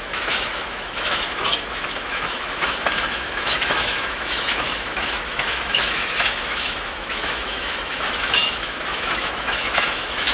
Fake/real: fake